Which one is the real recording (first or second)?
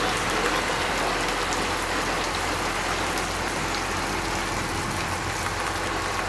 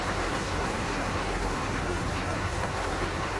first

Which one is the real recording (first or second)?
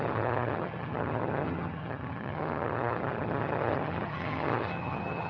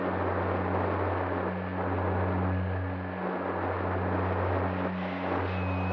second